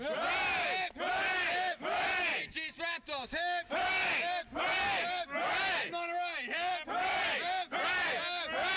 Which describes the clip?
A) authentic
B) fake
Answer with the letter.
A